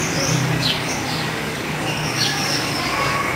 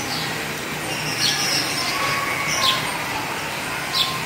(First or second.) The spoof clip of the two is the first